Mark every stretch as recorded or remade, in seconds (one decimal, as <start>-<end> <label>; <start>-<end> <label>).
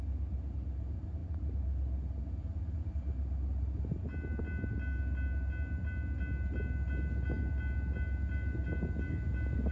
0.0-9.7 recorded